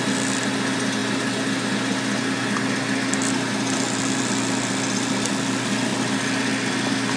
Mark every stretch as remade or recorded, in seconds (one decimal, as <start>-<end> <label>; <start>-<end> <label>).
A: 0.0-7.2 recorded

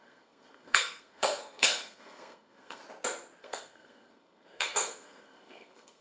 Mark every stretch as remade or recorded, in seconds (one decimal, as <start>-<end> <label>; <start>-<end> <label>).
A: 0.0-2.8 remade; 2.8-3.4 recorded; 3.4-6.0 remade

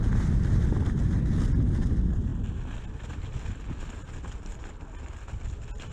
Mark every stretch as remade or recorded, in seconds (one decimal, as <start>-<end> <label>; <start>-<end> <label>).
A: 0.0-5.9 recorded

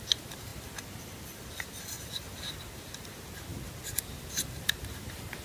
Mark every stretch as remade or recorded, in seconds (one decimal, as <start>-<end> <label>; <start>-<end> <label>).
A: 0.0-5.4 recorded

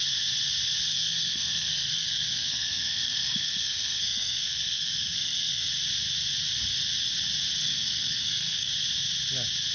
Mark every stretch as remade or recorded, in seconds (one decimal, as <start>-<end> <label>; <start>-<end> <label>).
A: 0.0-0.9 recorded; 0.9-5.7 remade; 5.7-7.6 recorded; 7.6-8.7 remade; 8.7-9.7 recorded

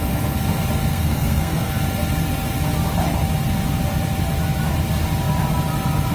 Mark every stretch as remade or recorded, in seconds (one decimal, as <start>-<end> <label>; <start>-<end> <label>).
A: 0.0-0.9 recorded; 0.9-1.7 remade; 1.7-6.1 recorded